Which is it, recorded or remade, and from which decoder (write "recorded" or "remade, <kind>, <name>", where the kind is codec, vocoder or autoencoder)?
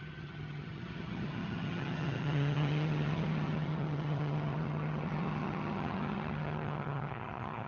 remade, vocoder, HiFi-GAN